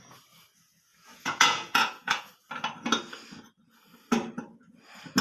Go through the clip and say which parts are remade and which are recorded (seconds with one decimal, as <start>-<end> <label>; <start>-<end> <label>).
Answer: 0.0-0.9 recorded; 0.9-2.3 remade; 2.3-5.2 recorded